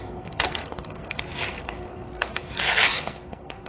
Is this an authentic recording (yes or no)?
no